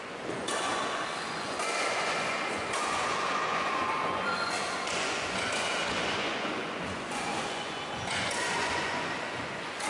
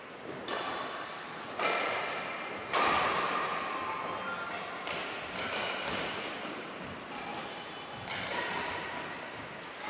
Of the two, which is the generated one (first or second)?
first